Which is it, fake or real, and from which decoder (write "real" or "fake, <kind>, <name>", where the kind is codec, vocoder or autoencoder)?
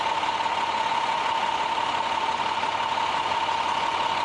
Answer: fake, vocoder, Vocos